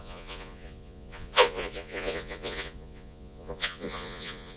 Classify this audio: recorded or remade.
remade